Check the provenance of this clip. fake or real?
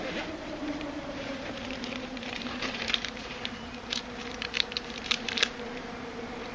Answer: fake